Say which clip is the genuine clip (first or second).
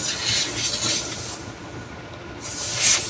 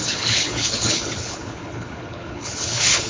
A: first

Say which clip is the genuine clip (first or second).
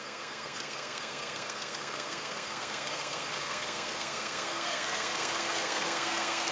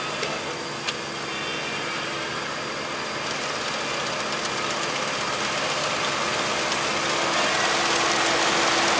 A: second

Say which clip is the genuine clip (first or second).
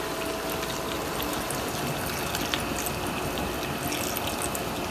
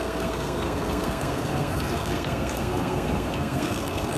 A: first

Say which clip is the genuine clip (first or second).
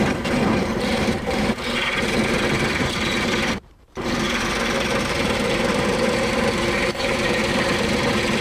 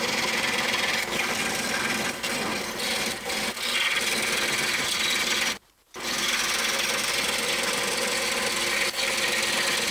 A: second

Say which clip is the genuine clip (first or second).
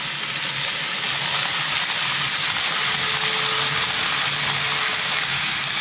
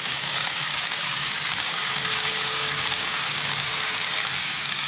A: first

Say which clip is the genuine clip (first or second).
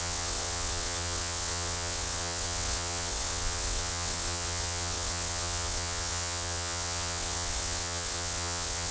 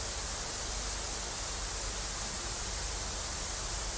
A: second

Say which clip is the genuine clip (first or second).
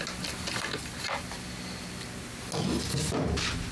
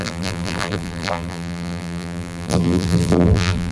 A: first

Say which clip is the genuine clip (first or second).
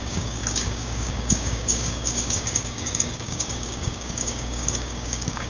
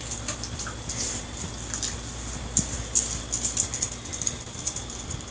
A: second